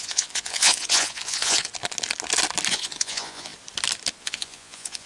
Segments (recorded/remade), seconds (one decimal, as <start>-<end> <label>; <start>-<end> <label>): 0.0-1.7 remade; 1.7-2.7 recorded; 2.7-3.5 remade; 3.5-4.2 recorded; 4.2-5.1 remade